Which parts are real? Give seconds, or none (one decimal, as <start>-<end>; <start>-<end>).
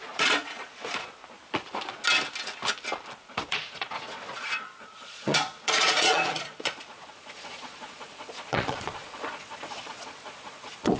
1.2-3.5